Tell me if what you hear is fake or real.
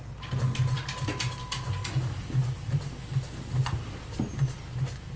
real